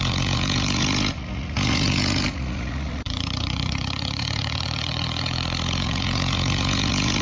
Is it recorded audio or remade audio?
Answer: remade